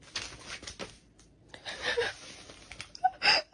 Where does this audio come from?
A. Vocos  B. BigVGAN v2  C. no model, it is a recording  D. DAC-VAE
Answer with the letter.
C